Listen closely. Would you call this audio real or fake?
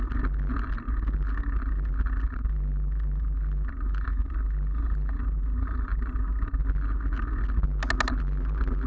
real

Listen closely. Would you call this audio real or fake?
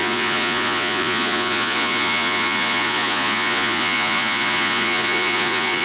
fake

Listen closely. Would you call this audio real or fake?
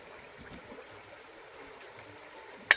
real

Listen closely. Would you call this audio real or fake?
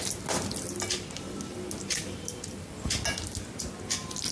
real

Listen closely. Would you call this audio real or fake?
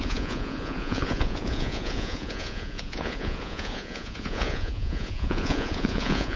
fake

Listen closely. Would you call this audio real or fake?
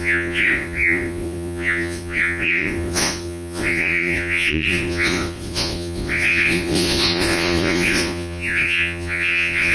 fake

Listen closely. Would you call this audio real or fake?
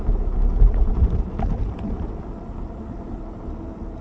real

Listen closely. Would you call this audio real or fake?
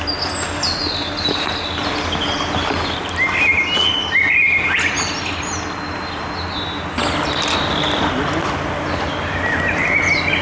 real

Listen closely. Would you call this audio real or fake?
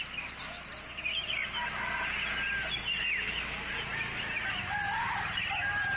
real